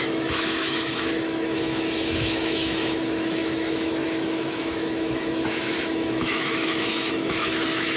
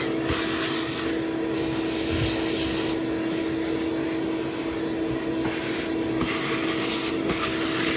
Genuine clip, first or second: second